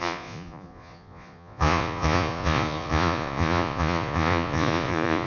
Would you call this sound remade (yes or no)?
yes